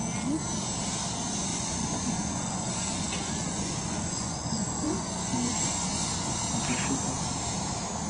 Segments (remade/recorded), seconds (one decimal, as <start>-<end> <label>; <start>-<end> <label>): 0.0-1.5 recorded; 1.5-6.4 remade; 6.4-8.1 recorded